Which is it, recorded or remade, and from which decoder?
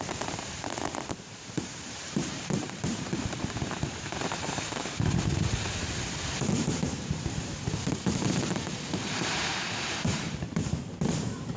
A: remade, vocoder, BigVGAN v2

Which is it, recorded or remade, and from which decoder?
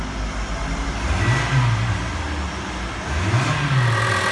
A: recorded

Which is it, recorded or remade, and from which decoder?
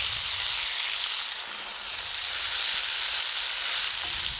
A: recorded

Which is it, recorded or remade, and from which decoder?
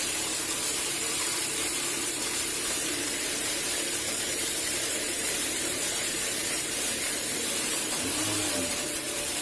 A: remade, vocoder, BigVGAN v2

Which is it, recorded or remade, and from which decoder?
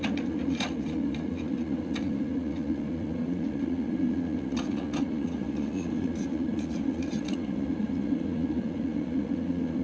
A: remade, vocoder, Vocos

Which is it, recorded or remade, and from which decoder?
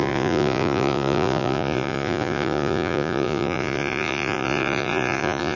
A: remade, vocoder, Vocos